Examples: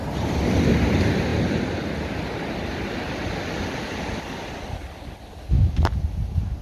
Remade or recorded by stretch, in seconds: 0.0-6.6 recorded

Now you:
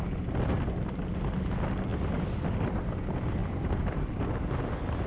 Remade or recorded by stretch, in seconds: 0.0-1.9 recorded; 1.9-2.9 remade; 2.9-3.4 recorded; 3.4-4.1 remade; 4.1-5.1 recorded